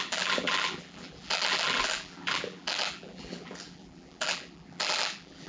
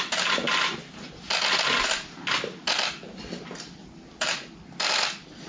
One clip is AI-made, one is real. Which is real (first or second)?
second